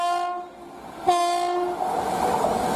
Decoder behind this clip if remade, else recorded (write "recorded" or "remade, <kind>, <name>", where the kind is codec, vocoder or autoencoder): recorded